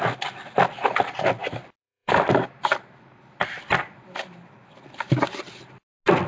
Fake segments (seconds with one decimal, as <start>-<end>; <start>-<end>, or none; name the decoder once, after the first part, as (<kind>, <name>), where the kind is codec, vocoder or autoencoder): 1.4-5.2 (vocoder, BigVGAN v2)